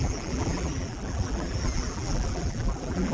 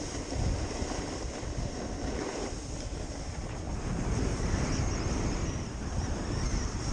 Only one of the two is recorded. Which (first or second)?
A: second